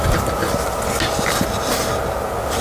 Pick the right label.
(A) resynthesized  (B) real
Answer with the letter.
B